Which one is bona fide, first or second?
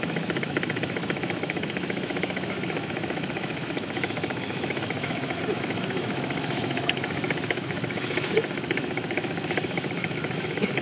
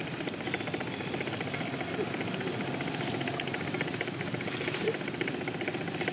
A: second